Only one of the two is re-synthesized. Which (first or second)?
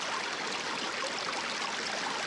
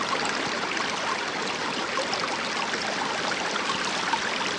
second